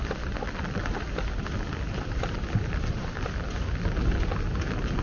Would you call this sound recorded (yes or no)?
yes